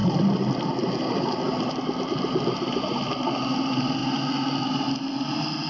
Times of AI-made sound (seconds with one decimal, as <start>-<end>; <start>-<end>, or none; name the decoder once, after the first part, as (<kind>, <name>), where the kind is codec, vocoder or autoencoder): none